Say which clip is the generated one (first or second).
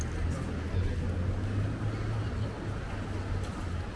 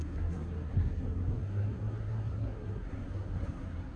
second